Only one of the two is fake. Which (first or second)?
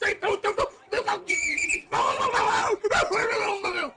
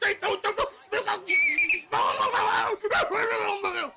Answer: first